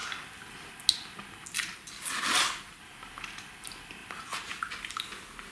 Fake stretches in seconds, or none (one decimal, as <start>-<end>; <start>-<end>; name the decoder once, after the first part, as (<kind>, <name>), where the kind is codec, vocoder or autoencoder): none